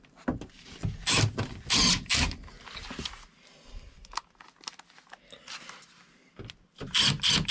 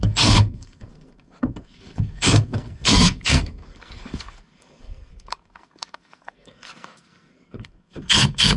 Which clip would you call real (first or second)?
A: first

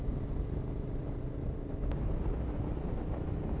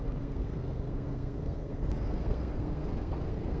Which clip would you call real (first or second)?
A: first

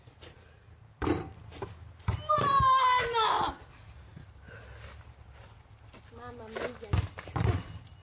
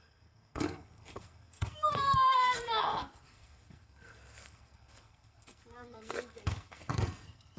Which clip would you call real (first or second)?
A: first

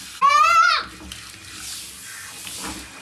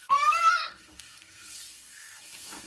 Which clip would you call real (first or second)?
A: first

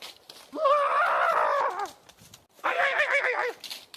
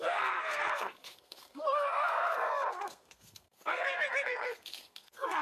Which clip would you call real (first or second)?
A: first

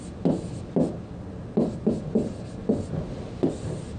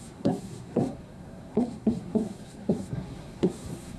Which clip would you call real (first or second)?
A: first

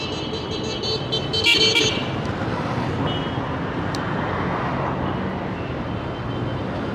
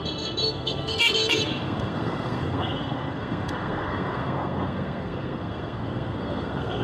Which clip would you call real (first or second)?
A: first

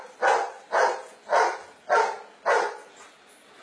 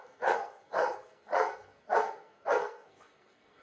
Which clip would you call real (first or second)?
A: first